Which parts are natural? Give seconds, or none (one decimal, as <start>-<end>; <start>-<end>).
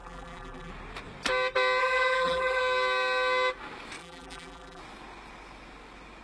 0.7-1.8; 2.6-4.0; 4.8-6.2